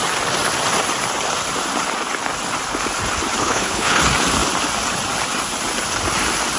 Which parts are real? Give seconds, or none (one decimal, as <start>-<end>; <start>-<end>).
0.0-3.4; 4.0-6.6